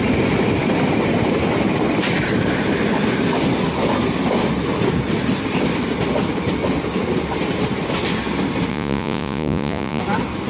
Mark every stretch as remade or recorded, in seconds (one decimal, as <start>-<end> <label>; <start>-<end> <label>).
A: 0.0-8.7 recorded; 8.7-10.0 remade; 10.0-10.5 recorded